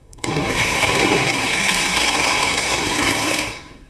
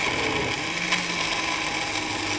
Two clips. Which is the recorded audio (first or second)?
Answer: second